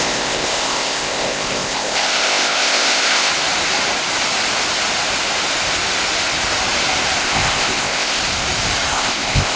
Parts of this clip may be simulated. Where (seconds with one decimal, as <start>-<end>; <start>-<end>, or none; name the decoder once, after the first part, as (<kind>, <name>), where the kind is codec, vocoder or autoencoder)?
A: 0.0-3.3 (codec, ZipCodec); 7.2-8.2; 8.9-9.6

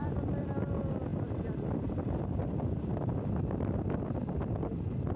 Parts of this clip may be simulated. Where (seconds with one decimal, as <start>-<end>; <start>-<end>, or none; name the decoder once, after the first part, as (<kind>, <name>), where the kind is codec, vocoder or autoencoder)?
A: none

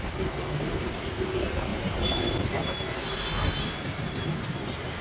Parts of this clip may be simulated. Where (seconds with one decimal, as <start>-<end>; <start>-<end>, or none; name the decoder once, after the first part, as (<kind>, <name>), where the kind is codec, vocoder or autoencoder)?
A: none

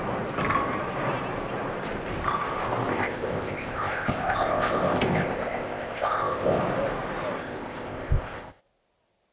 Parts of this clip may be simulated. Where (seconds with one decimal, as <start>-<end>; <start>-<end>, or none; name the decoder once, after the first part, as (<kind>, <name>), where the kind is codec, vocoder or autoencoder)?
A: 2.9-6.6 (codec, ZipCodec); 7.4-8.6

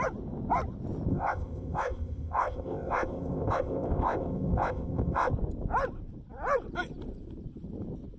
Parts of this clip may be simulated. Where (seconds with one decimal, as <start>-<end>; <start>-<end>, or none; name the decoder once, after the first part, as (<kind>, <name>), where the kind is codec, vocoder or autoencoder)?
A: 1.1-5.3 (codec, ZipCodec)